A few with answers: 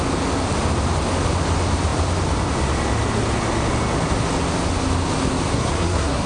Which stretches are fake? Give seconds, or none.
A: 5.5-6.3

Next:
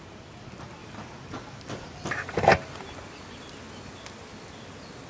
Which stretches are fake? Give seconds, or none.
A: 0.8-2.5

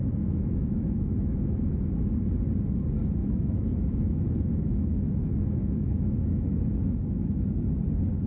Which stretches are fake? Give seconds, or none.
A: 0.0-1.7; 3.2-7.5

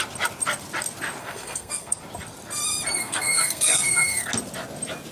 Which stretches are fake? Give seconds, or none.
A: 1.2-2.0; 3.0-4.3

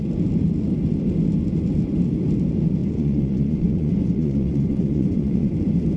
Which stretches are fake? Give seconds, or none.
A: 2.8-5.5

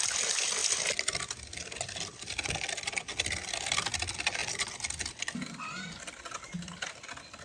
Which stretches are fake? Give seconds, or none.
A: none

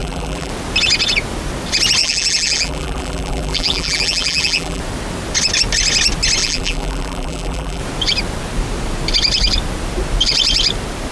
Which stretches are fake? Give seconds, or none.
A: 0.0-0.5; 2.0-4.8; 6.4-7.8